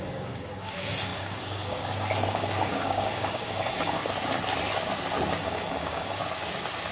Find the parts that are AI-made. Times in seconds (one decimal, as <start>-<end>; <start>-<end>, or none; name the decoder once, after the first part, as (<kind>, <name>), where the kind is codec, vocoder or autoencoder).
0.0-4.0 (codec, DAC); 5.3-6.2

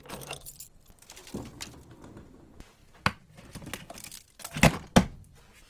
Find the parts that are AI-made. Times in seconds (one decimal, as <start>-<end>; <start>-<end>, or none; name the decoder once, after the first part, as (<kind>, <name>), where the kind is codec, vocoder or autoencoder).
none

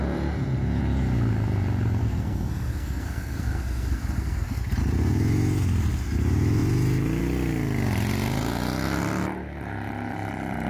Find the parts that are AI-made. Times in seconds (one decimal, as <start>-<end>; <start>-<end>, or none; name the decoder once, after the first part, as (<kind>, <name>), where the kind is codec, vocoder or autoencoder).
2.0-4.6 (codec, SNAC)